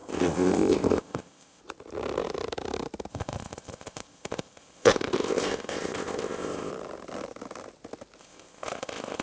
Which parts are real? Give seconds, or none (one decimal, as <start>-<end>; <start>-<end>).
1.6-3.1; 6.7-8.2